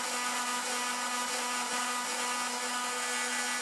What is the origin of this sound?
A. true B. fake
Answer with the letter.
A